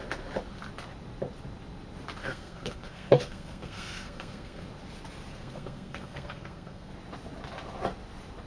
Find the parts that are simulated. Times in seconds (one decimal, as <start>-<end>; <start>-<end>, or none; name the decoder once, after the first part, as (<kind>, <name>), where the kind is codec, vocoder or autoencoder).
2.2-4.7 (codec, SNAC); 5.3-6.9